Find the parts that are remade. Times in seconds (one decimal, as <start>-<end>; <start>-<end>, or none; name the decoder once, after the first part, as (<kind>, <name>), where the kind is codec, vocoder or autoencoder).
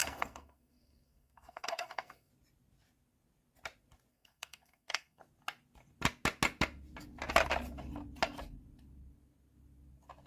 0.0-2.3 (codec, SNAC); 4.1-5.2